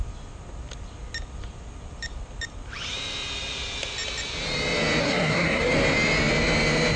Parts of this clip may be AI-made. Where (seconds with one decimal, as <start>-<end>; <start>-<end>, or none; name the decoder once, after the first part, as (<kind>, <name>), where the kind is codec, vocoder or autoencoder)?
5.0-5.7 (codec, SNAC)